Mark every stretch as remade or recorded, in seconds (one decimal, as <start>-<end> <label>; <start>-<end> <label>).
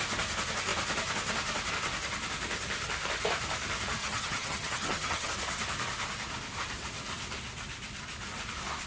0.0-4.0 recorded; 4.0-5.3 remade; 5.3-8.9 recorded